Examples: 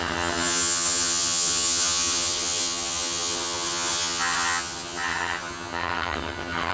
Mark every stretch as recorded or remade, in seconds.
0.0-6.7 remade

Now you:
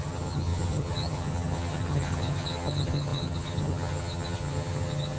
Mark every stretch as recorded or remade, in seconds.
0.0-5.2 remade

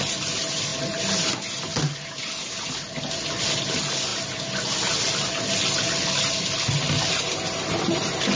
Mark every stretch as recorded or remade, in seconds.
0.0-8.4 recorded